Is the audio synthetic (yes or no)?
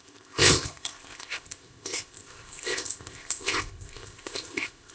yes